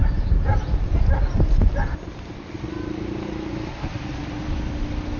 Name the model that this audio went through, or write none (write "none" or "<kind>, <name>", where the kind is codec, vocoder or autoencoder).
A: none